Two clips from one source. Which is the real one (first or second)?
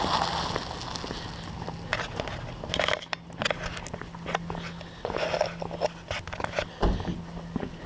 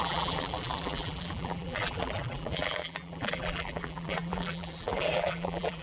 first